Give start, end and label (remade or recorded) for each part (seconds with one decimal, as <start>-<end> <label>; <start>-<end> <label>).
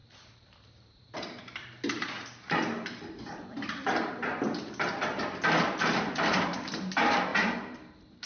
0.0-8.3 remade